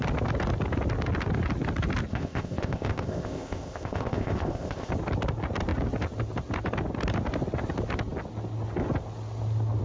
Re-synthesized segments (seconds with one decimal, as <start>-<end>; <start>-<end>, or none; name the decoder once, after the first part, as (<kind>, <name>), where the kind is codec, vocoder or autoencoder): 2.1-4.9 (codec, ZipCodec)